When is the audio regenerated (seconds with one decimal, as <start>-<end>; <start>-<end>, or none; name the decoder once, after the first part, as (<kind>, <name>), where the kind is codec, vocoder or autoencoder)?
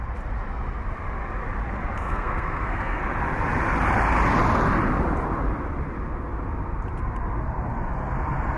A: 2.0-3.0 (codec, SNAC)